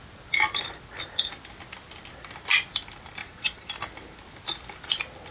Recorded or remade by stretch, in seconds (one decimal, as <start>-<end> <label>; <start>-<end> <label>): 0.0-3.2 recorded; 3.2-3.7 remade; 3.7-5.3 recorded